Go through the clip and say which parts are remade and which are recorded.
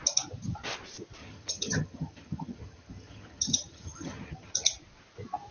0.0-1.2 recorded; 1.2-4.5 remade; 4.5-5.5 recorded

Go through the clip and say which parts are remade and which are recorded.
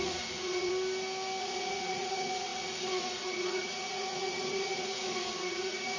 0.0-0.7 remade; 0.7-1.4 recorded; 1.4-6.0 remade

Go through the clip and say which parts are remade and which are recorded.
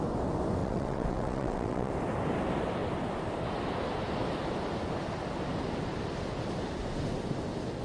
0.0-0.6 recorded; 0.6-1.9 remade; 1.9-7.8 recorded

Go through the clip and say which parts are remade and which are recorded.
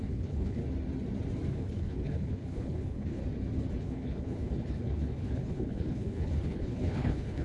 0.0-0.6 remade; 0.6-1.5 recorded; 1.5-3.2 remade; 3.2-3.8 recorded; 3.8-7.4 remade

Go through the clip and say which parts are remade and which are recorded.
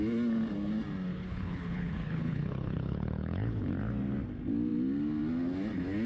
0.0-1.1 recorded; 1.1-3.7 remade; 3.7-6.1 recorded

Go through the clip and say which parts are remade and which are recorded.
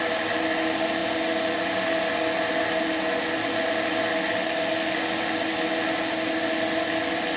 0.0-7.4 recorded